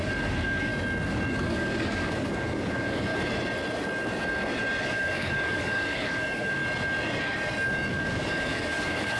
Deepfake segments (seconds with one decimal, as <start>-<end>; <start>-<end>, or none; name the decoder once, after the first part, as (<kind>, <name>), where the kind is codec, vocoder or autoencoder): 0.0-0.7 (codec, DAC); 1.3-3.1; 4.8-6.6; 7.9-9.2